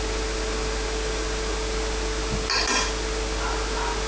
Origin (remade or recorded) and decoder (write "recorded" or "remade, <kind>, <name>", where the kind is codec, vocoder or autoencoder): recorded